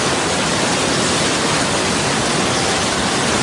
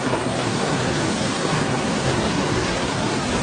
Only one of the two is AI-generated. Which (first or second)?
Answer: second